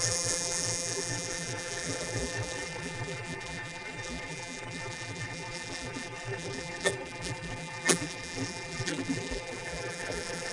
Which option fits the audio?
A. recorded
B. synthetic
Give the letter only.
B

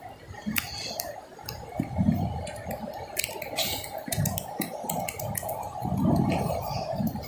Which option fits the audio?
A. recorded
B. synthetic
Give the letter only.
A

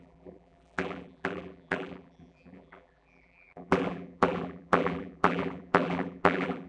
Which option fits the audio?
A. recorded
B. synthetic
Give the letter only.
B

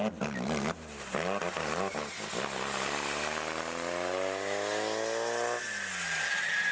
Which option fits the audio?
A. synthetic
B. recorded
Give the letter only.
B